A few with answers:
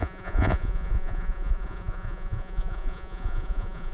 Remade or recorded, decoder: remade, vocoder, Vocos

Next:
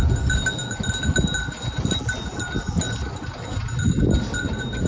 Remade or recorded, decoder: recorded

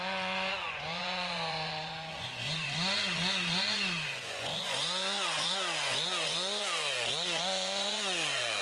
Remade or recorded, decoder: remade, vocoder, Vocos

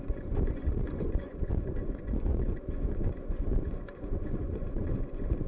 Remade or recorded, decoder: remade, vocoder, Vocos